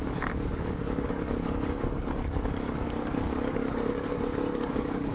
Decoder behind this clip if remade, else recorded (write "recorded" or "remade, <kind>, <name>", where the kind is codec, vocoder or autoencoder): remade, codec, DAC